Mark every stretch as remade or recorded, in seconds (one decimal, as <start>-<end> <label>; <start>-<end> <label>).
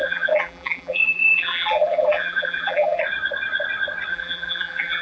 0.0-3.0 remade; 3.0-4.1 recorded; 4.1-5.0 remade